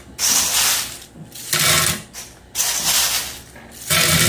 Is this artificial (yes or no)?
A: no